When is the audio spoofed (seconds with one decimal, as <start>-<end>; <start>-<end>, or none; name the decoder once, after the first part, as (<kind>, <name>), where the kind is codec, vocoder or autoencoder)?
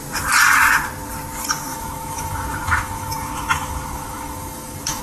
1.7-5.0 (autoencoder, DAC-VAE)